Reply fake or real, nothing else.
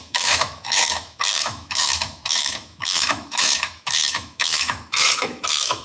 fake